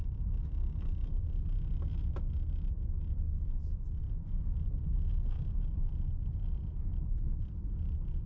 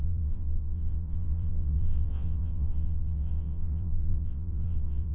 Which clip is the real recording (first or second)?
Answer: first